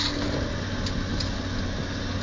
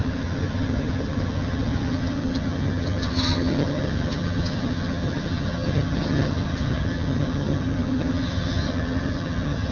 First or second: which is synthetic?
second